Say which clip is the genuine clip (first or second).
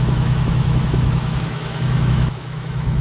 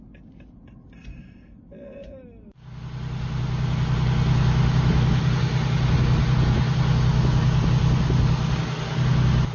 second